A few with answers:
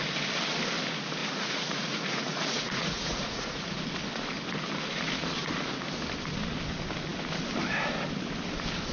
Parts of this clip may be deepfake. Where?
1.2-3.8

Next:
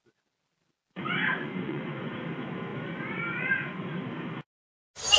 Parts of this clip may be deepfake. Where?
1.2-2.1; 2.7-4.0